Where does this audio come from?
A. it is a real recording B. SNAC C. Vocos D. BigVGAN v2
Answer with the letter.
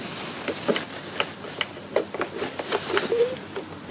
A